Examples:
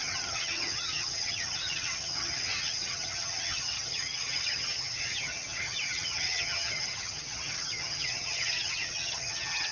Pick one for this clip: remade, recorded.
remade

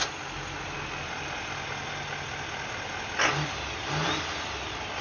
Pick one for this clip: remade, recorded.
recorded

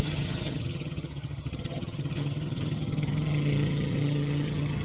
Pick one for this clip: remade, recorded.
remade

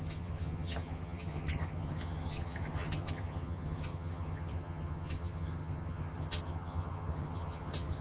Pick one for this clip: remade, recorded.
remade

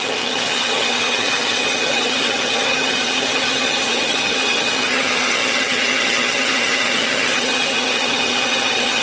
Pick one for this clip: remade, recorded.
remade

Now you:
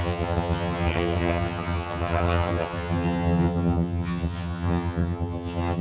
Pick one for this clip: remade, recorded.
remade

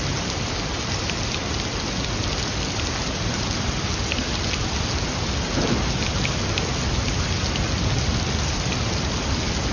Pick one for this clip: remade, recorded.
recorded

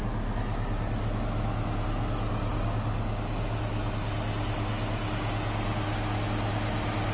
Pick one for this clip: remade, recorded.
recorded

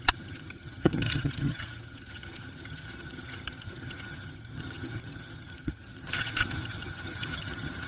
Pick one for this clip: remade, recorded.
remade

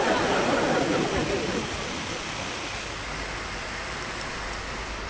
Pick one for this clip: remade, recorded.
recorded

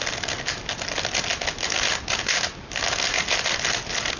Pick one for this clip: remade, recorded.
recorded